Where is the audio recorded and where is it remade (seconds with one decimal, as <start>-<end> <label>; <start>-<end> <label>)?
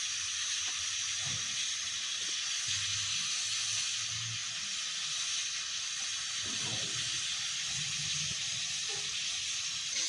0.0-10.1 recorded